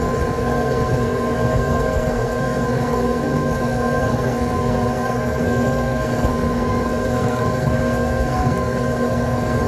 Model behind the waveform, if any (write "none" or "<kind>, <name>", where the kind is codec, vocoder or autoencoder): codec, SNAC